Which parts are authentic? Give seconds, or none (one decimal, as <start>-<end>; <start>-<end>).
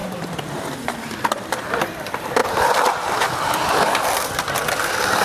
none